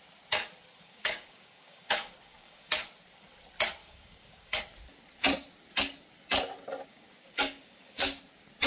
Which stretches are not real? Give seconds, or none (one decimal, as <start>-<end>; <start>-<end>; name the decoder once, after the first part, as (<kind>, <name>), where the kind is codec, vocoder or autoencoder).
0.7-2.7 (codec, DAC); 3.8-4.6; 6.9-8.2